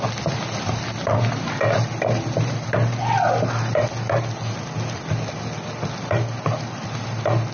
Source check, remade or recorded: recorded